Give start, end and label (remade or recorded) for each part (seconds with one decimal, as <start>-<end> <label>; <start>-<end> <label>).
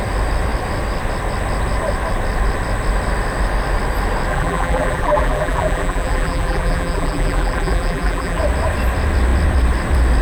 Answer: 0.0-4.3 recorded; 4.3-8.4 remade; 8.4-10.2 recorded